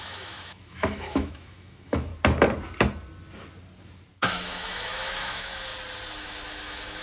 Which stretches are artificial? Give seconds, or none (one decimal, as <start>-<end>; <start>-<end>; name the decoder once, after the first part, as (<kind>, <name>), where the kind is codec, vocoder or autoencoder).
0.0-2.1 (autoencoder, DAC-VAE); 4.2-5.7; 6.2-7.0